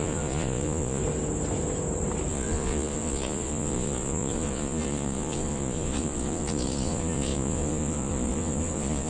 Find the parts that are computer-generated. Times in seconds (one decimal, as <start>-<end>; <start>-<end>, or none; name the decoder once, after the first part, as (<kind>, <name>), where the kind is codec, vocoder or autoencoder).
0.0-1.0 (vocoder, Vocos); 2.3-9.1